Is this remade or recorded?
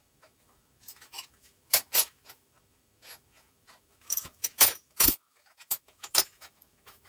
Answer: remade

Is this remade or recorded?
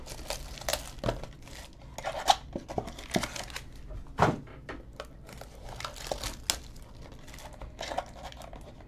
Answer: recorded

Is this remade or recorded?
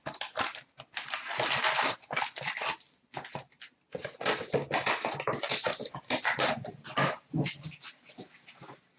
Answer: recorded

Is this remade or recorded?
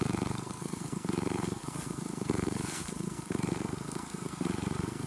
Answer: remade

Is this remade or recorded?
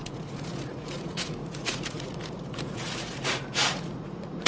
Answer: remade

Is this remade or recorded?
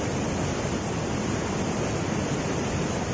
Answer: recorded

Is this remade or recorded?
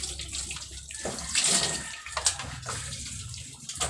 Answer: recorded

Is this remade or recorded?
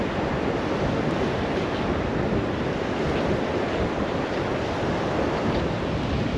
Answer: recorded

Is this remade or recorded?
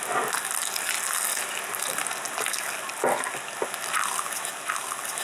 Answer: recorded